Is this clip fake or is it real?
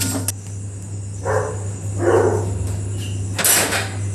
real